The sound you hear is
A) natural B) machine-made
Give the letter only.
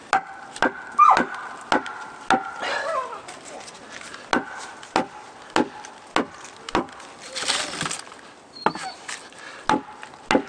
A